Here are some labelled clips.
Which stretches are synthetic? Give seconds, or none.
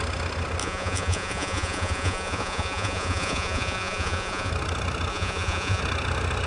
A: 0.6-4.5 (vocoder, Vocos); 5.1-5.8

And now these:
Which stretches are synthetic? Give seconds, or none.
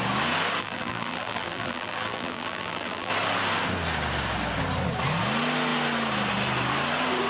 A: 0.6-3.1 (vocoder, BigVGAN v2)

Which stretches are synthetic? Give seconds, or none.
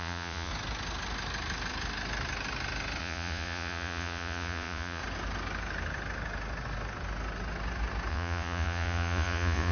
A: 0.0-0.5 (vocoder, Vocos); 3.0-5.0; 8.1-9.7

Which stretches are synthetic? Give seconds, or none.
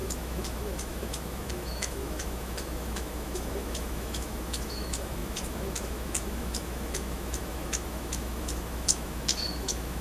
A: 0.0-10.0 (autoencoder, DAC-VAE)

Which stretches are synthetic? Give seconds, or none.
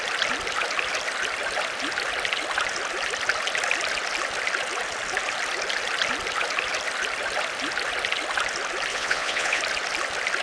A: 8.9-9.6 (vocoder, WaveNeXt)